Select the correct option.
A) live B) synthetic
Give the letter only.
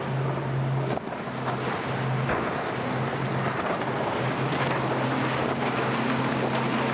A